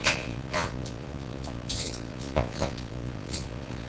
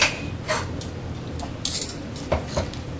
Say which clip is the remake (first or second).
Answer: first